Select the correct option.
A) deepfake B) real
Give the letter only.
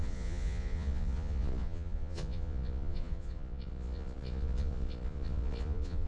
A